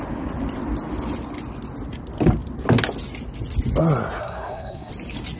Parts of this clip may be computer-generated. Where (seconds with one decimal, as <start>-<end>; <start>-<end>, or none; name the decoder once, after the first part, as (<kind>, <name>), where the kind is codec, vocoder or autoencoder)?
4.2-4.9 (codec, SNAC)

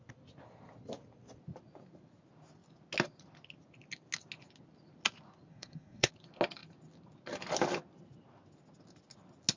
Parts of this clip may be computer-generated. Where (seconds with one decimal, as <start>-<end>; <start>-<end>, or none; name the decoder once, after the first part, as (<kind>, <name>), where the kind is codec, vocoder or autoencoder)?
5.5-6.1 (codec, SNAC)

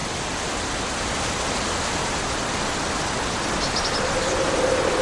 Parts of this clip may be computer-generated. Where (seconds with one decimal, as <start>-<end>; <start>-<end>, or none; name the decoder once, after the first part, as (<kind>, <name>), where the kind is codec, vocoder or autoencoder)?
none

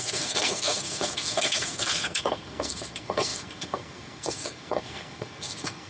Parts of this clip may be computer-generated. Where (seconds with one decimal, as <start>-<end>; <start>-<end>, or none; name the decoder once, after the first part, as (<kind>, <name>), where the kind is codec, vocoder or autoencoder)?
0.0-5.9 (codec, SNAC)

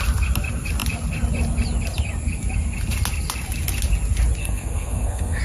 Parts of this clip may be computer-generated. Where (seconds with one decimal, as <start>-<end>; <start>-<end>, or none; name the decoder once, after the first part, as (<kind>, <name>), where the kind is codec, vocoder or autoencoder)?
4.4-5.4 (codec, SNAC)

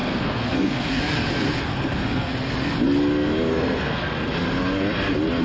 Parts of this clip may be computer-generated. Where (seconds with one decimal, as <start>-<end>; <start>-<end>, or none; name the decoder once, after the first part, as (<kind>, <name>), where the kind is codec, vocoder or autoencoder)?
0.0-1.0 (codec, SNAC); 1.7-2.3; 3.5-4.3

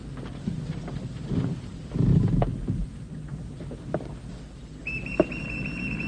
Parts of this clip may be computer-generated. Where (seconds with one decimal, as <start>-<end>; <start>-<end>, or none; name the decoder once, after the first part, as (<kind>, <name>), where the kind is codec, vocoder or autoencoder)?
none